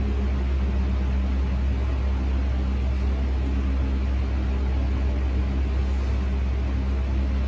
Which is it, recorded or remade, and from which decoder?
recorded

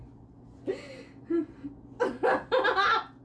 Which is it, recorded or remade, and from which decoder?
recorded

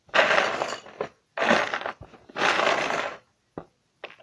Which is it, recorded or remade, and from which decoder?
recorded